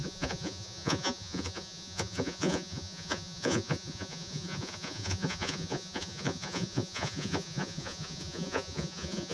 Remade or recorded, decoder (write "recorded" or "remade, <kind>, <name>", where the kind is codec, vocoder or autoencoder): remade, vocoder, Vocos